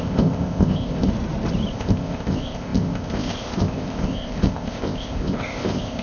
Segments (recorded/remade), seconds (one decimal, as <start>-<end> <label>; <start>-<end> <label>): 0.0-1.1 remade; 1.1-1.7 recorded; 1.7-6.0 remade